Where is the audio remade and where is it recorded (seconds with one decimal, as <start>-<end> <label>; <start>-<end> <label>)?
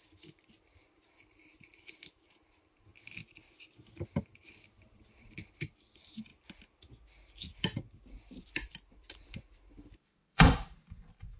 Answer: 0.0-2.9 remade; 2.9-4.2 recorded; 4.2-6.3 remade; 6.3-8.4 recorded; 8.4-11.4 remade